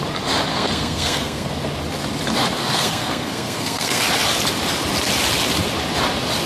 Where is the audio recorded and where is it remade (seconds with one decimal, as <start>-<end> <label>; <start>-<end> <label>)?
0.0-0.5 recorded; 0.5-1.5 remade; 1.5-2.6 recorded; 2.6-4.0 remade; 4.0-6.5 recorded